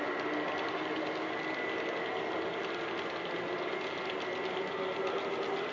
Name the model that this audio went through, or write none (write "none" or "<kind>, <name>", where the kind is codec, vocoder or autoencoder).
none